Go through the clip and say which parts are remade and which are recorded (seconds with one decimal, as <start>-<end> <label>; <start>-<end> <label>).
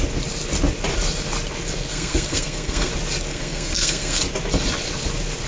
0.0-1.9 recorded; 1.9-2.9 remade; 2.9-3.3 recorded; 3.3-4.2 remade; 4.2-5.5 recorded